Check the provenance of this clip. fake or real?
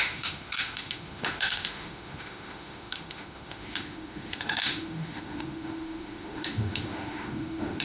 fake